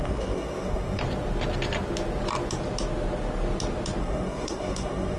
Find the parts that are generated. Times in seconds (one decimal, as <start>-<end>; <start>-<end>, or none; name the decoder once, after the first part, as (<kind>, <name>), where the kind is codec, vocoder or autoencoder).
0.0-1.0 (codec, SNAC); 4.0-5.2